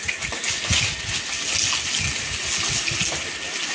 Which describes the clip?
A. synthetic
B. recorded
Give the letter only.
B